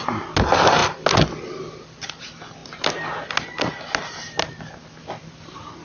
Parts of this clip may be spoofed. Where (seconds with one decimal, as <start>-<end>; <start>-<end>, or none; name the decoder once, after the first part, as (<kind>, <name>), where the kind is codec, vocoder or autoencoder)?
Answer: none